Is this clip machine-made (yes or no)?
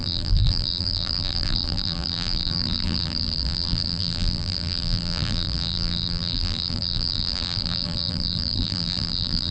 yes